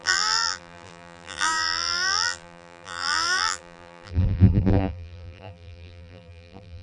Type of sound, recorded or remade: remade